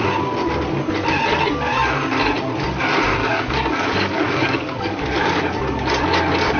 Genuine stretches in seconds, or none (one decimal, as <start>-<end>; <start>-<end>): 0.0-3.2; 5.4-6.6